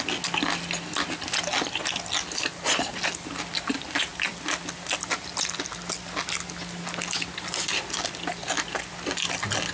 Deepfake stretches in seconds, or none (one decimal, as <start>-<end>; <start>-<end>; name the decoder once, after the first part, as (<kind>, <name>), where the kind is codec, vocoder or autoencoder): none